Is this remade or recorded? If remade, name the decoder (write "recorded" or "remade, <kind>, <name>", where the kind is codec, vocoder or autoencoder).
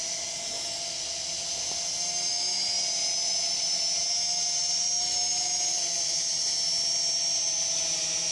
recorded